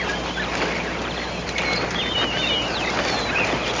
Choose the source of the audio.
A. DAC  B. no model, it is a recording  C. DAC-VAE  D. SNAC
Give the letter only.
B